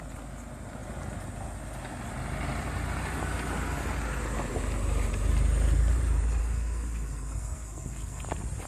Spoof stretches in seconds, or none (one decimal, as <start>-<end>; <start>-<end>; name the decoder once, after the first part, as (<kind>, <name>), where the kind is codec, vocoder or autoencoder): 6.4-8.2 (codec, SNAC)